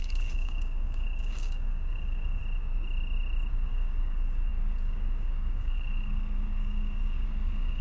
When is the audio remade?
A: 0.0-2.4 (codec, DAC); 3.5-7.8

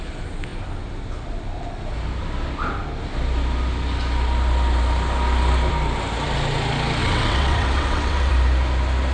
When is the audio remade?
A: 7.0-8.3 (vocoder, WaveNeXt)

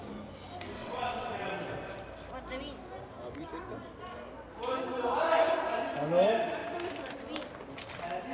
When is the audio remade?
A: 0.8-1.5 (vocoder, WaveNeXt)

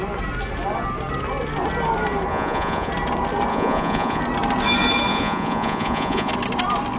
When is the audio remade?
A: 2.3-2.9 (vocoder, Vocos); 3.5-4.2; 5.1-6.3

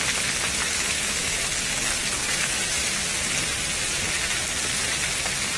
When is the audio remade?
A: 0.6-1.5 (autoencoder, DAC-VAE); 2.2-3.0

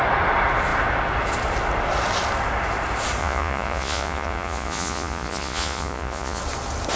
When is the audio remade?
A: 3.2-6.4 (vocoder, Vocos)

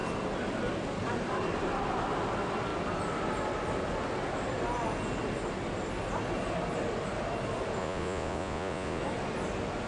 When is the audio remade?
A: 7.8-9.0 (vocoder, Vocos)

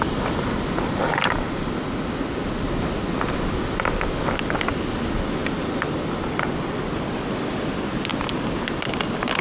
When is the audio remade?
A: none